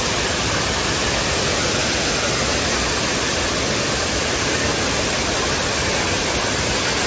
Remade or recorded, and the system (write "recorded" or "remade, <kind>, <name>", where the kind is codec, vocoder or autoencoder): recorded